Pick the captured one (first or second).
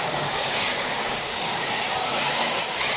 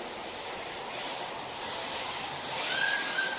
second